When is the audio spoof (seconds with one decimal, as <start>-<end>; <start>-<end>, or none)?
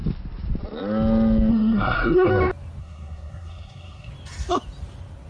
1.5-2.3; 2.8-4.1